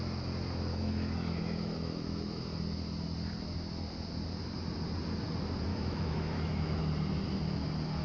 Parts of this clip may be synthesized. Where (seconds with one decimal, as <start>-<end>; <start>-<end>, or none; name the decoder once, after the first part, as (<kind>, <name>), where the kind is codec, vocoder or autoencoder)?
0.7-2.4 (autoencoder, DAC-VAE); 5.7-6.8